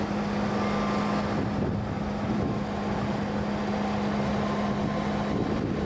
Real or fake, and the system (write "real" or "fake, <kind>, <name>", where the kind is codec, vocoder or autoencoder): real